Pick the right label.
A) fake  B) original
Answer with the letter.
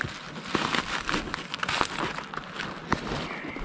B